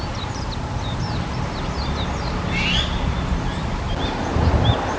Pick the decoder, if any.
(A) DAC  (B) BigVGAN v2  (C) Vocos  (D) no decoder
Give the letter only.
D